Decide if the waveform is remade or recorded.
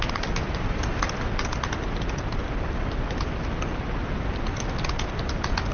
recorded